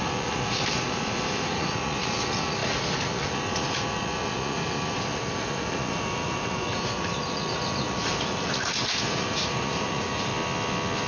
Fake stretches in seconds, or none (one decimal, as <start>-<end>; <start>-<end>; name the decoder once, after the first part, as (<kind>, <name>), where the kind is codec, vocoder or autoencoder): 0.0-10.3 (vocoder, Vocos)